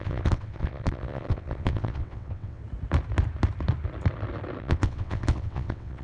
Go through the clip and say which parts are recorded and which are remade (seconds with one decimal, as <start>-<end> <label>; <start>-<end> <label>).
0.0-2.6 remade; 2.6-4.6 recorded; 4.6-6.0 remade